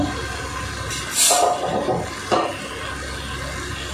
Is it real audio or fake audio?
real